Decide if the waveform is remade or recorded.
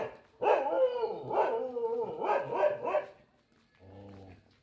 recorded